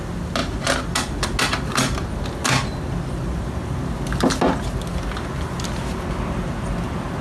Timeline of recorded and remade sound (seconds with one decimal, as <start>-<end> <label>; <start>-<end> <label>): 0.0-7.2 recorded